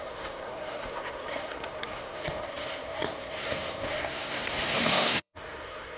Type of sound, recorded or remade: remade